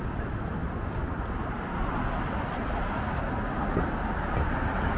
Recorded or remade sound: recorded